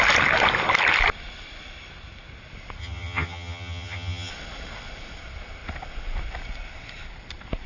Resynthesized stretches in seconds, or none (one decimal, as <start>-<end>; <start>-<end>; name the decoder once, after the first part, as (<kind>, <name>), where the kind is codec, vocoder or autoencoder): 2.8-4.3 (vocoder, HiFi-GAN)